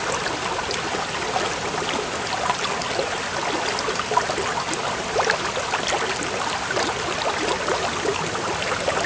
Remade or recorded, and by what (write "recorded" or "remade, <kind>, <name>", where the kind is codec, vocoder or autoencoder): recorded